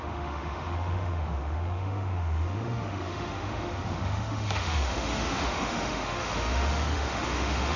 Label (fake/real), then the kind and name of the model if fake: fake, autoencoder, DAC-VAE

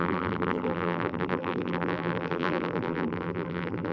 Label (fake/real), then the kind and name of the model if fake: fake, vocoder, BigVGAN v2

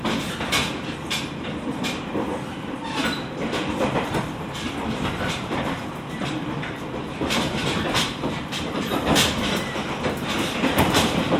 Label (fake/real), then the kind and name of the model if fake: fake, vocoder, BigVGAN v2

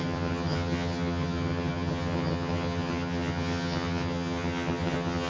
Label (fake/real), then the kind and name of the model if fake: fake, vocoder, HiFi-GAN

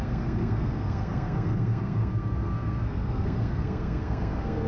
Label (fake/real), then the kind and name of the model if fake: fake, codec, SNAC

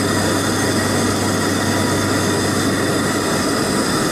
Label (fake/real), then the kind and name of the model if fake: real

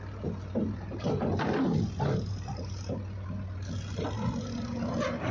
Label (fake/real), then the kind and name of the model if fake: real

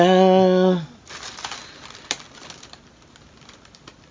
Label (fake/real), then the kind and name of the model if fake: real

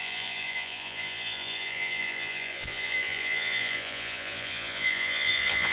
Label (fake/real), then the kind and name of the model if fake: fake, vocoder, Vocos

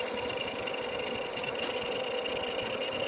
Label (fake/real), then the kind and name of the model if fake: real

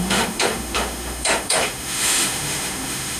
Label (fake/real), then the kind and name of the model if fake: fake, autoencoder, DAC-VAE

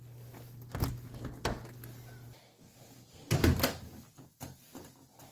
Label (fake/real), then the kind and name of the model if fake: real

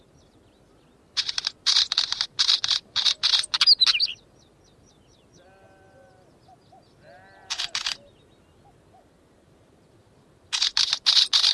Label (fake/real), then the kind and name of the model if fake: real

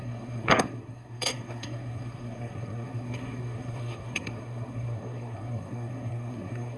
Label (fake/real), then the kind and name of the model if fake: fake, codec, SNAC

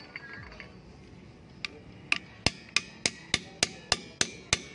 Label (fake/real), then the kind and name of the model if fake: real